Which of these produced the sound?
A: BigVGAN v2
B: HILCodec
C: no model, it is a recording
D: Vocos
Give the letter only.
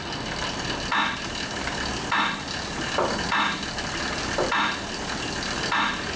C